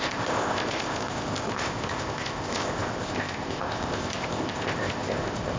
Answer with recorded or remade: remade